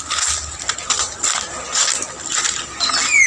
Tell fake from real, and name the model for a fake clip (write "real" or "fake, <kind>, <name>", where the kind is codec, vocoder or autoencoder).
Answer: real